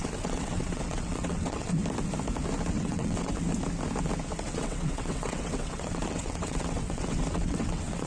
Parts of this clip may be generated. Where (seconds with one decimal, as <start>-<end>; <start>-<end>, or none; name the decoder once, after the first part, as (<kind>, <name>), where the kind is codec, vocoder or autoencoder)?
0.0-1.7 (vocoder, WaveNeXt); 2.6-3.4; 4.4-8.1